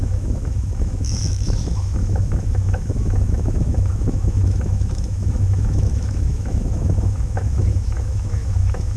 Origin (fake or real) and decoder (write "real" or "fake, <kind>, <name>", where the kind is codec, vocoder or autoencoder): fake, autoencoder, DAC-VAE